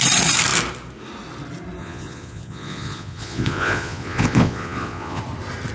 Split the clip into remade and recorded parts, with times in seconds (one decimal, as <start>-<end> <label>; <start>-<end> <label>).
0.0-1.8 recorded; 1.8-5.2 remade; 5.2-5.7 recorded